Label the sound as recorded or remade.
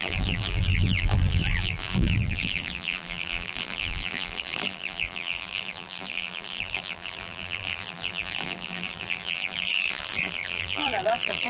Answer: remade